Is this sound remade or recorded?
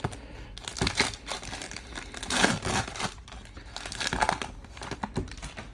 recorded